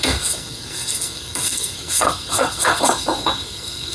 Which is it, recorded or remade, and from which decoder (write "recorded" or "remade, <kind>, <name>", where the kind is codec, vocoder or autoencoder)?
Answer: remade, codec, SNAC